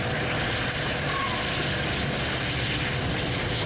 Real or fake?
real